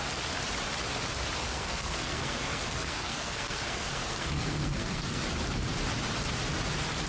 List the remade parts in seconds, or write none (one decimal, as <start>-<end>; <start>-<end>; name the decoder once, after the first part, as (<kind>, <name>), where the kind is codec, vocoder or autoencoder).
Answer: 1.4-5.2 (codec, SNAC)